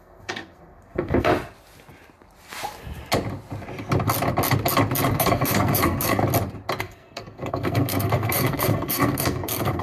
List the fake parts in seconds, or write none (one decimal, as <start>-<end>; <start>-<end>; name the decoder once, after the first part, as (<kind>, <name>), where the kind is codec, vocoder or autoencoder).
0.0-1.3 (codec, SNAC); 5.1-6.2; 6.8-9.8